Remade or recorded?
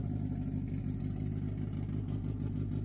recorded